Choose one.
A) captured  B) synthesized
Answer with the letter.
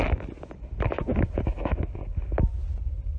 A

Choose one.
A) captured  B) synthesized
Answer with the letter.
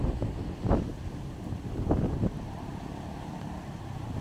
A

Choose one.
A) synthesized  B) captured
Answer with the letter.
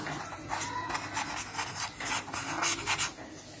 B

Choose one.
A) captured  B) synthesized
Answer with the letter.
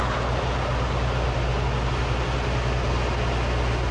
A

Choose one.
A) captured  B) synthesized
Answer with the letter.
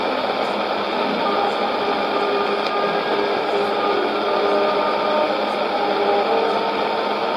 A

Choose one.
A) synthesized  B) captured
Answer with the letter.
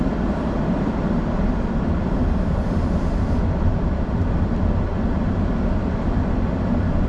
A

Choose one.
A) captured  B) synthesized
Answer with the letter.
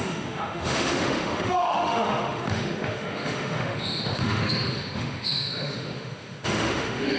B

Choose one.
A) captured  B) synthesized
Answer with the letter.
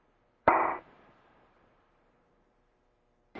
B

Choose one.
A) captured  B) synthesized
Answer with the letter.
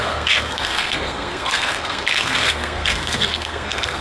B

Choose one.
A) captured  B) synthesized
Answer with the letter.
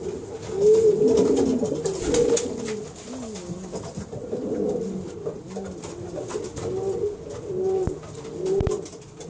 A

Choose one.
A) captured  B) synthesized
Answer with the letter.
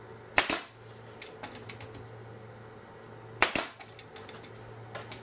A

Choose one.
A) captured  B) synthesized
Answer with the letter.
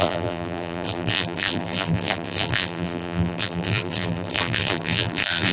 B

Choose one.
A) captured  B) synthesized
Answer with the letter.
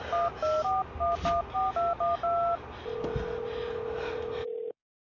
A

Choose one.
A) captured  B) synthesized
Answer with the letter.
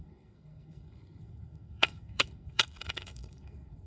B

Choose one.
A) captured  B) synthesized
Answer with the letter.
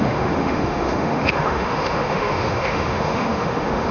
B